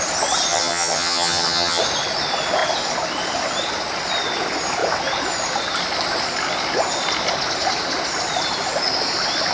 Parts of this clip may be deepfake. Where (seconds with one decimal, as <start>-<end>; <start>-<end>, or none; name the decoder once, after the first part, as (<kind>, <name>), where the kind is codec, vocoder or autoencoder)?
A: 0.5-1.8 (vocoder, HiFi-GAN)